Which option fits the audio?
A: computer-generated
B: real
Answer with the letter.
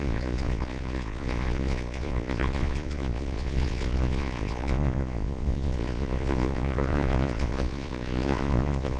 A